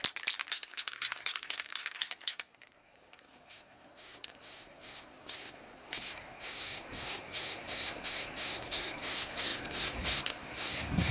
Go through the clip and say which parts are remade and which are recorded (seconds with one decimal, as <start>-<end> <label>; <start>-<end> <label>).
0.0-0.5 recorded; 0.5-11.1 remade